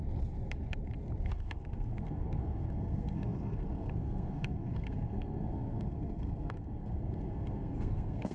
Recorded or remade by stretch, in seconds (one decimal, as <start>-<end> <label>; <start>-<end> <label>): 0.0-1.3 recorded; 1.3-8.3 remade